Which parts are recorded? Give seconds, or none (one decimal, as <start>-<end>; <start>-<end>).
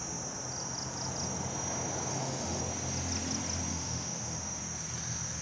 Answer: 0.0-2.1; 2.6-3.7; 4.6-5.4